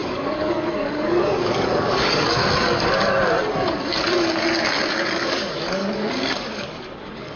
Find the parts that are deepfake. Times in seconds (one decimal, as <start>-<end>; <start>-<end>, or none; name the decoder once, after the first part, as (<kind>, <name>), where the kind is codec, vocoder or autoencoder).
0.0-2.4 (codec, DAC); 4.9-7.4